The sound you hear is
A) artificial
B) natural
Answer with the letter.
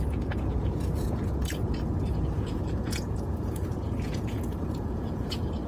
A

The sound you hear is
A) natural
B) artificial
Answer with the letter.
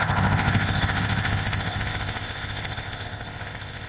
B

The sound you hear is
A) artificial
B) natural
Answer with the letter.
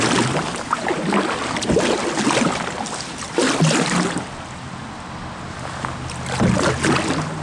B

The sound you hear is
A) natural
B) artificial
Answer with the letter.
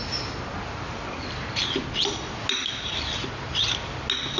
A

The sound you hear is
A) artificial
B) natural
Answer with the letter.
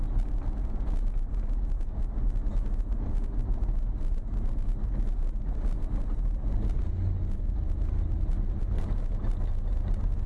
B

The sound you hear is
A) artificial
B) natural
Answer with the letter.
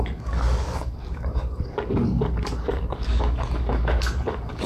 A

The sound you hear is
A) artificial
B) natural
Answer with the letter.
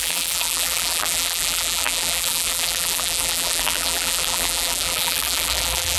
A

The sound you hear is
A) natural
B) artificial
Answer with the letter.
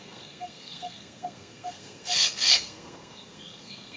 B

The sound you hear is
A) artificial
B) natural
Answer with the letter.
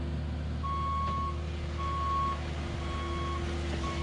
B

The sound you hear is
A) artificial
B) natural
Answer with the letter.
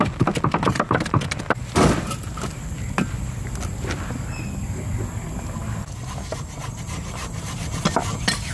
B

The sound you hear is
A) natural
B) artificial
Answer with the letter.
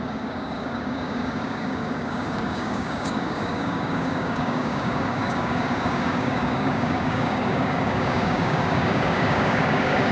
B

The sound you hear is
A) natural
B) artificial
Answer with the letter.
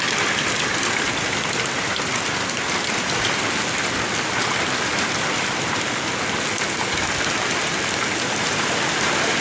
A